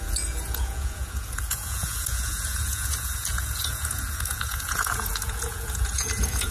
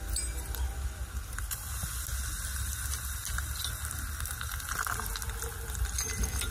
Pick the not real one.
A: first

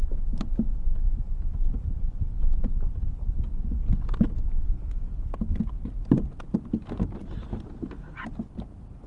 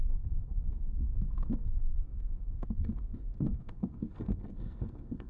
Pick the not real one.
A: second